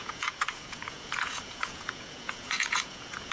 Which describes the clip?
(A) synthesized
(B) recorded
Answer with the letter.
A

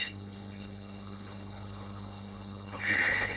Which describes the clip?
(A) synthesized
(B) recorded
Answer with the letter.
A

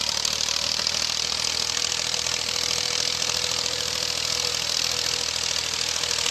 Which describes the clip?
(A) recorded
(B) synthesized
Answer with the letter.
A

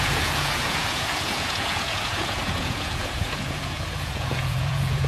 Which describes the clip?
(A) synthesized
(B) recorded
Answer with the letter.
A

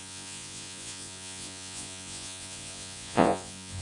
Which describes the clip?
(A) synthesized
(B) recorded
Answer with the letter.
A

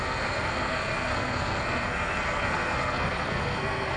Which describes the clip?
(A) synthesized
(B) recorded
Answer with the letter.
A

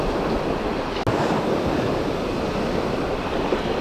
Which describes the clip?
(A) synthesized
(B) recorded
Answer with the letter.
B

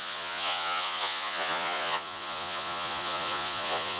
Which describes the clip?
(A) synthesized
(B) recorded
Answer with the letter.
A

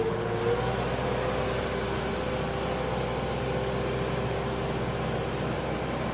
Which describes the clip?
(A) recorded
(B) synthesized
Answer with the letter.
A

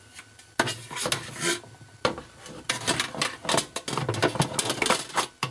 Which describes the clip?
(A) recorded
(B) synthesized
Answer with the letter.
A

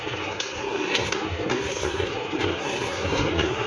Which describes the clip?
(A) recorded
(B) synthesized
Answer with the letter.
B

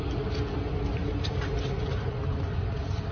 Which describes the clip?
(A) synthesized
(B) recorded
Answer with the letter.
B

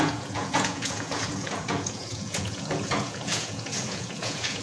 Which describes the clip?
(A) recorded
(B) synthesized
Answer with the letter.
B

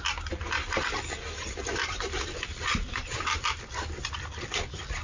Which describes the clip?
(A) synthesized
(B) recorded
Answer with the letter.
A